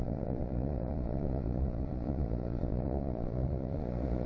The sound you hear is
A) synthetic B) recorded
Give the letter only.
A